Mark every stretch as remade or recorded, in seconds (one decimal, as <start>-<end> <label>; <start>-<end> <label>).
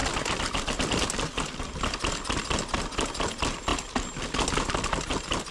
0.0-5.5 recorded